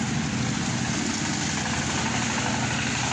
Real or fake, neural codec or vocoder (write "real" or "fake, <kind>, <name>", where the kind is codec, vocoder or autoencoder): real